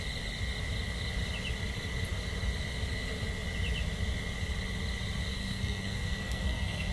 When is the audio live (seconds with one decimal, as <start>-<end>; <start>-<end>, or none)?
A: 0.0-5.3